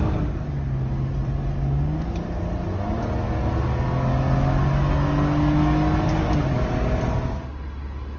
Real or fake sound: real